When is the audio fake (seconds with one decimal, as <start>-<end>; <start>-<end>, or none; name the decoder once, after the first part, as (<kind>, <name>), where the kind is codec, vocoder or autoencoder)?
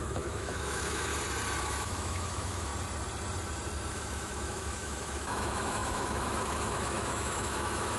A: 0.0-1.1 (autoencoder, DAC-VAE); 1.6-2.7; 3.9-8.0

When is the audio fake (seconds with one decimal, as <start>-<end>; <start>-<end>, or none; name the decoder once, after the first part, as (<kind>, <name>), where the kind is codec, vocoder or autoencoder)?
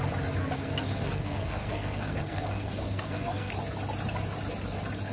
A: 0.4-3.5 (codec, SNAC)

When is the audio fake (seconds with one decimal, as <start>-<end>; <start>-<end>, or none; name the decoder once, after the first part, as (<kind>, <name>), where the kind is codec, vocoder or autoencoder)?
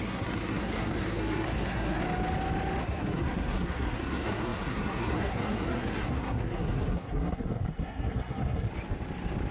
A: 0.0-2.0 (codec, SNAC); 2.8-8.7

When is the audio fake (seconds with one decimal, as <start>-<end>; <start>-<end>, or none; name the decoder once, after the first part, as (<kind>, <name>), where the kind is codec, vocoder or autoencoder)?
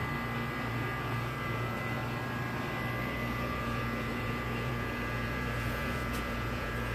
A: 0.7-2.0 (vocoder, Vocos); 3.0-6.9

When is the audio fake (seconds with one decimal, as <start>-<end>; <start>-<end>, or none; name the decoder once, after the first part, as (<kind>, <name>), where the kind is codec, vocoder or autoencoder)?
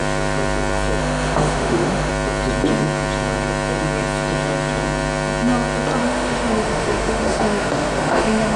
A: 1.0-2.1 (autoencoder, DAC-VAE); 6.0-8.6